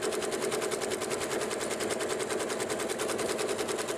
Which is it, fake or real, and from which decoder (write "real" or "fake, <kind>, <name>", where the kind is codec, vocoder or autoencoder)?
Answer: real